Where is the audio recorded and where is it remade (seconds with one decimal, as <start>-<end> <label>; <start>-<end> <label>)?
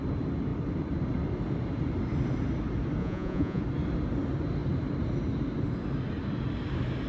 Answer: 0.0-3.0 recorded; 3.0-3.6 remade; 3.6-7.1 recorded